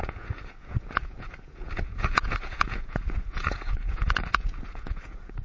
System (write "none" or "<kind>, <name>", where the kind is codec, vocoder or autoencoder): vocoder, Vocos